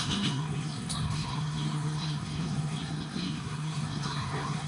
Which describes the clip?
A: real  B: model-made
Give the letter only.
B